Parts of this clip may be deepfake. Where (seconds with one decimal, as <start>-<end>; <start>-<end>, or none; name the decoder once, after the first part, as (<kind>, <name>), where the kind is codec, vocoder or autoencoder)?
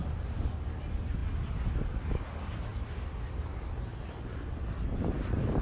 none